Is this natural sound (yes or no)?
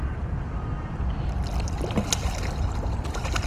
yes